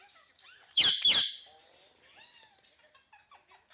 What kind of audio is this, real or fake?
real